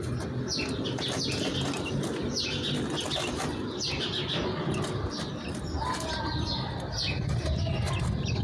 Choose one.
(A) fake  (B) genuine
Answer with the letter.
B